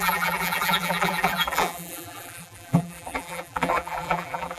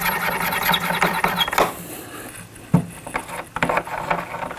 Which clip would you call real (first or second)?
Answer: second